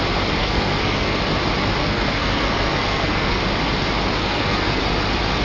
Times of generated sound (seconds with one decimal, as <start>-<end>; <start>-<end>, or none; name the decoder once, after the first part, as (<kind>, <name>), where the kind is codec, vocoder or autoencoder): 0.4-1.2 (codec, SNAC); 1.8-3.4; 4.2-4.8